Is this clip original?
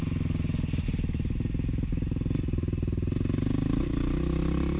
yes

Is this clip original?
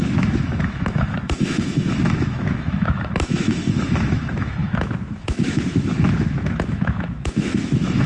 no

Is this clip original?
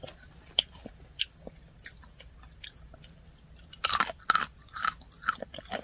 yes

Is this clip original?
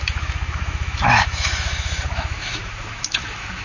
no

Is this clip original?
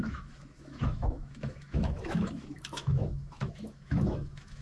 no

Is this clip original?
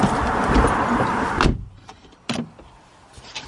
yes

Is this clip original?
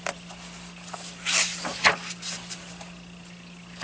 yes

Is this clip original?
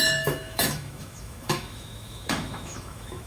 no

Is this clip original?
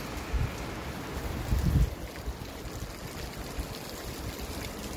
yes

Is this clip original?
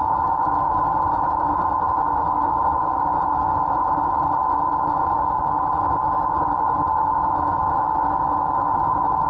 yes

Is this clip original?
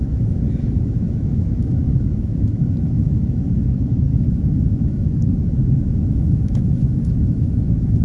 no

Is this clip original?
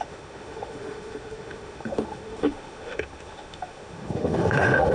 no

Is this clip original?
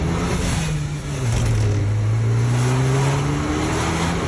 yes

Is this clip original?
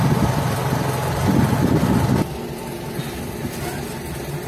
yes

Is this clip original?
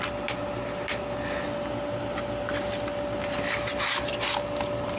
yes